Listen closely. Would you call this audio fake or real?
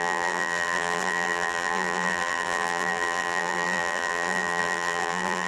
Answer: fake